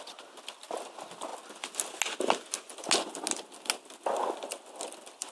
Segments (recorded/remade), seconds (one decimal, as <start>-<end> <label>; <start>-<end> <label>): 0.0-5.3 recorded